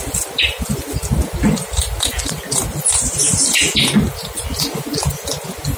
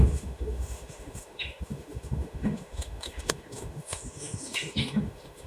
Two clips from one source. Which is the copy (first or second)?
second